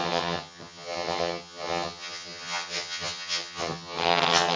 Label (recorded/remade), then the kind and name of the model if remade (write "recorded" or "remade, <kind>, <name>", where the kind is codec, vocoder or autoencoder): remade, vocoder, HiFi-GAN